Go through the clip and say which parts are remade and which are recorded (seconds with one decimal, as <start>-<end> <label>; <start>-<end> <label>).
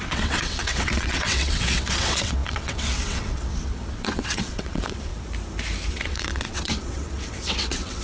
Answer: 0.0-5.1 remade; 5.1-5.9 recorded; 5.9-8.0 remade